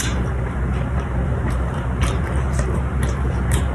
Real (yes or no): no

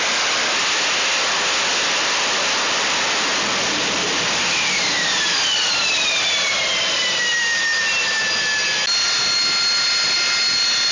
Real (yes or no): no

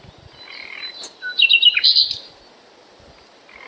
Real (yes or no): yes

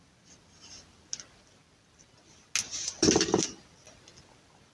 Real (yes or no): yes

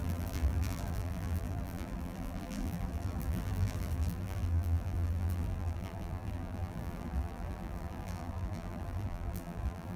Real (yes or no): no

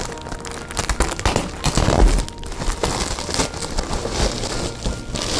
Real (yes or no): yes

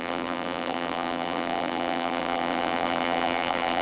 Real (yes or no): no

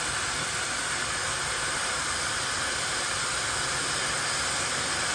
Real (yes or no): yes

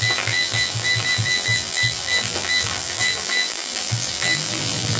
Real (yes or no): no